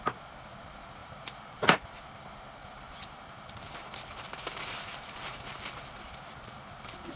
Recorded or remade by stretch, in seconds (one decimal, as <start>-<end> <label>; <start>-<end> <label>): 0.0-1.0 recorded; 1.0-1.9 remade; 1.9-2.6 recorded; 2.6-7.2 remade